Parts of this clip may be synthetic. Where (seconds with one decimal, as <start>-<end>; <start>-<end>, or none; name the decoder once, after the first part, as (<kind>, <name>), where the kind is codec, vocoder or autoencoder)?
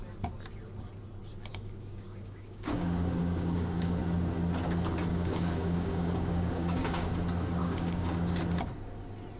1.5-4.0 (codec, DAC); 5.1-7.1; 7.6-8.4